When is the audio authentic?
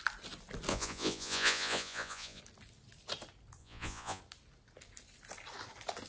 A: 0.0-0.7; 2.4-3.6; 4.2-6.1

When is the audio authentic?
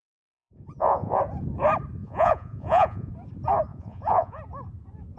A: 1.2-2.0; 3.1-3.7; 4.4-5.2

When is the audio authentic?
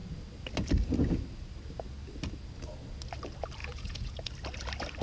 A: 0.0-3.6; 4.2-5.0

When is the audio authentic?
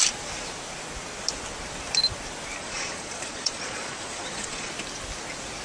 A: 0.0-2.6; 4.7-5.6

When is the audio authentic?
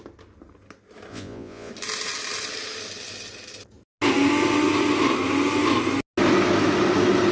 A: 0.0-1.1; 1.7-7.3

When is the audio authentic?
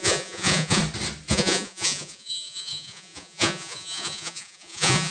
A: 0.8-1.3